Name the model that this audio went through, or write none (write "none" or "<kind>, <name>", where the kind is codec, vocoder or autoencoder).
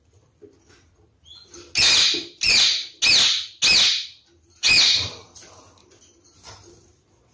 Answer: none